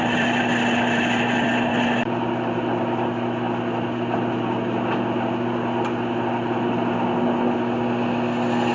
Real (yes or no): yes